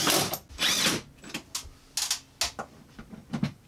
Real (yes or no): yes